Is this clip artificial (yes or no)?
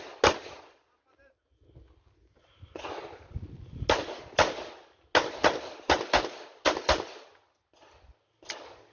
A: no